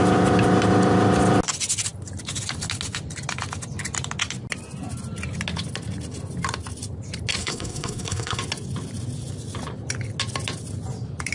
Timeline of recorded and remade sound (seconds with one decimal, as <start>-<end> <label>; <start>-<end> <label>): 0.0-7.4 recorded; 7.4-8.4 remade; 8.4-11.3 recorded